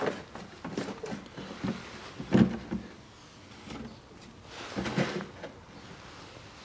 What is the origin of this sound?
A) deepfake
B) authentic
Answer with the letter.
B